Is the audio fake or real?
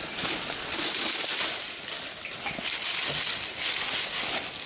real